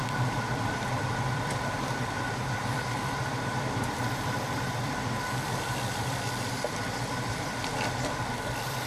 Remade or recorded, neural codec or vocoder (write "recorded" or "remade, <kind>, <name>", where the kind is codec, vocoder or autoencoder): remade, vocoder, BigVGAN v2